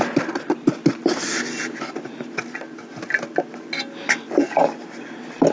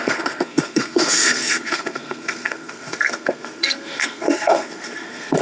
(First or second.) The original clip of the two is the first